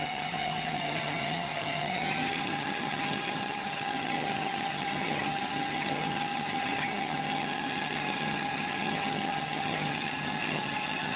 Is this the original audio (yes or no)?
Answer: no